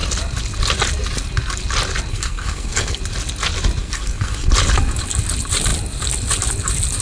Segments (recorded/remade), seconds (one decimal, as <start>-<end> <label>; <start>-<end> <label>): 0.0-2.1 recorded; 2.1-3.0 remade; 3.0-3.8 recorded; 3.8-4.5 remade; 4.5-7.0 recorded